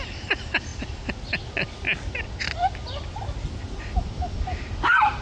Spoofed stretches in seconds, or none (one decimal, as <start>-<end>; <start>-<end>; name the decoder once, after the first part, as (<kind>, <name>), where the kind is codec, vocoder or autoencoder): none